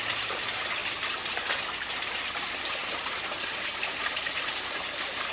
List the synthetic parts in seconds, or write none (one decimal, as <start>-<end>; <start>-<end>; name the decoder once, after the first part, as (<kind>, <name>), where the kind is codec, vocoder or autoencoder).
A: 2.8-4.7 (vocoder, BigVGAN v2)